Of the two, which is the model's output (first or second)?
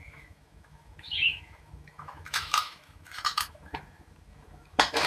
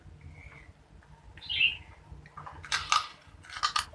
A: first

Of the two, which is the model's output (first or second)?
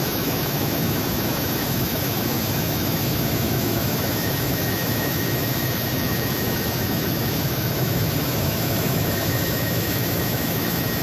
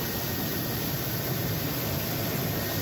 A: first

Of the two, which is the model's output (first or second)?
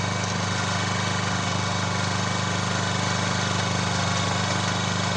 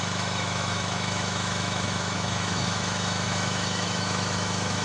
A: second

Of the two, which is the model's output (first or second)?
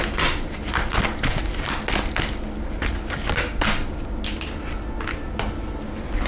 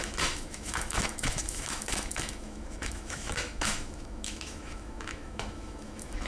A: second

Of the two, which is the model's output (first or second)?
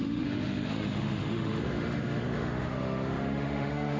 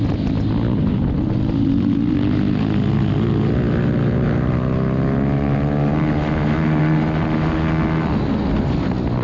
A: first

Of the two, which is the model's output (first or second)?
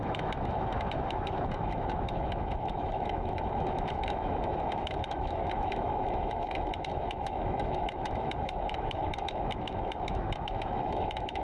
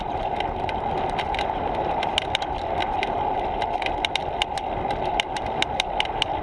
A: first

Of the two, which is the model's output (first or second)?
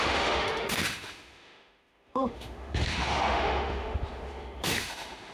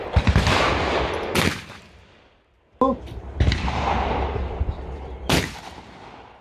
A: first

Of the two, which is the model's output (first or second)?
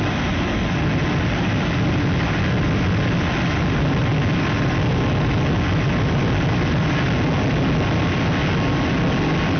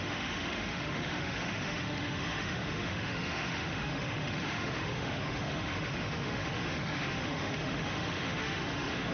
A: second